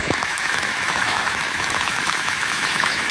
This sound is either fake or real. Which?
fake